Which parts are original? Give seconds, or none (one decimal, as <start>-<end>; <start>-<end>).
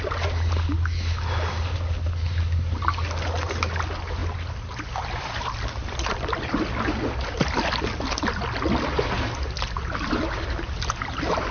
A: 0.0-4.2; 5.5-11.5